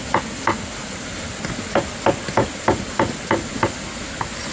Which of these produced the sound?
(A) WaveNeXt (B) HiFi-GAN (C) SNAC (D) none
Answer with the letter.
D